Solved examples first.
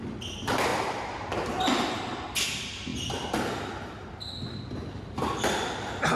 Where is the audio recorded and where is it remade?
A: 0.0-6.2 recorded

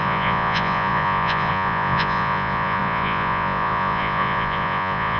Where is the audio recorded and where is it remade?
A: 0.0-5.2 remade

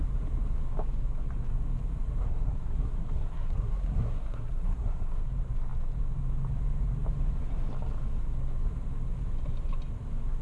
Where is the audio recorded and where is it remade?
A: 0.0-2.2 recorded; 2.2-5.2 remade; 5.2-10.4 recorded

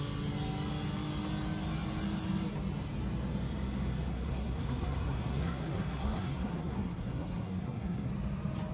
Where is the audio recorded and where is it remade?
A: 0.0-4.1 recorded; 4.1-8.1 remade; 8.1-8.7 recorded

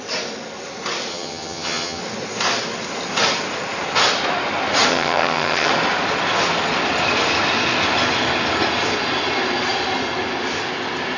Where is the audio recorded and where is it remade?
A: 0.0-1.1 recorded; 1.1-2.0 remade; 2.0-4.9 recorded; 4.9-5.7 remade; 5.7-11.2 recorded